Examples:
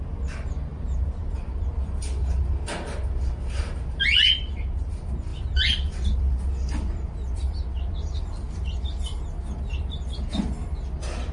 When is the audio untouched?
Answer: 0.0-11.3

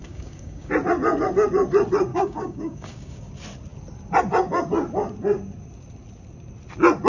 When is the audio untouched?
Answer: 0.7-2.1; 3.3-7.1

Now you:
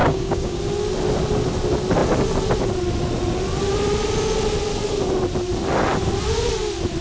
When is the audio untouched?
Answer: 0.6-7.0